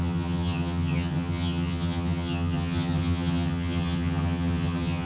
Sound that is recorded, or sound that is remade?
remade